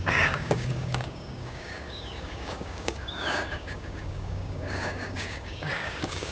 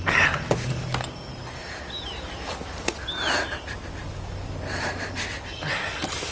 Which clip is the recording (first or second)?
second